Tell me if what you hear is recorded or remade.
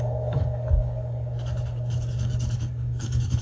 remade